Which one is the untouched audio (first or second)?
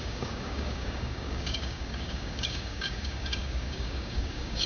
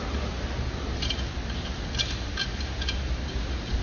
second